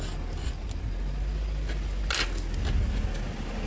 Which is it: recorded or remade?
recorded